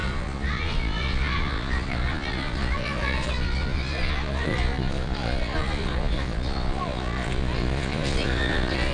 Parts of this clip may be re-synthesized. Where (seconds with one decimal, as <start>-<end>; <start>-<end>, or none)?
0.0-8.9